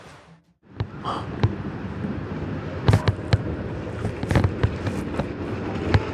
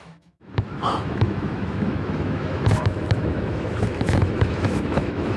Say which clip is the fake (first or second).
second